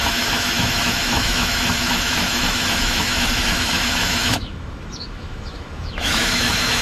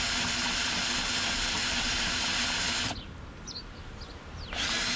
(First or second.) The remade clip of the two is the first